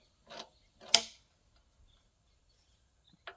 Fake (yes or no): no